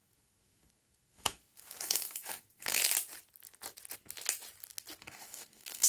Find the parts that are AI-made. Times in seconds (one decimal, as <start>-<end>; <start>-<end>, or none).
0.0-2.8; 5.0-5.9